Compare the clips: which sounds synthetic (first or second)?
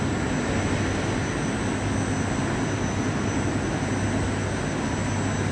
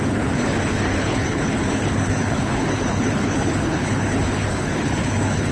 second